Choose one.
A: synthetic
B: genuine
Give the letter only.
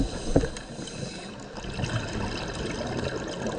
B